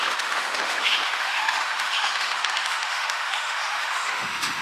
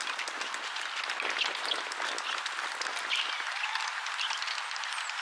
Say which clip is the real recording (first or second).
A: second